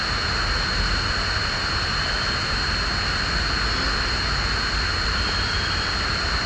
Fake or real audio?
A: real